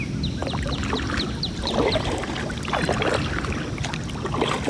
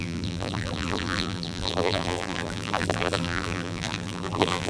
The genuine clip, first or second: first